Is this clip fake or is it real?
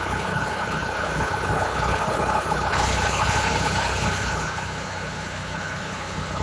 fake